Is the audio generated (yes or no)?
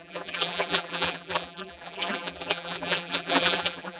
yes